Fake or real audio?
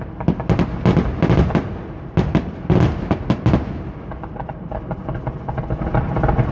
real